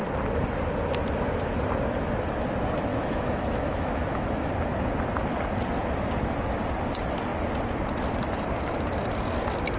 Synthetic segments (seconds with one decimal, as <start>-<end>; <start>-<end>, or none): 2.9-4.5